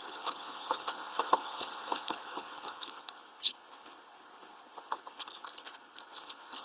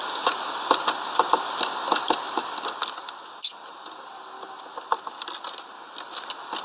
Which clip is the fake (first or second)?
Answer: first